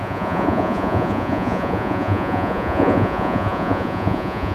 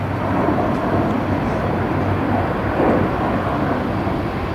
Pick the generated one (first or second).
first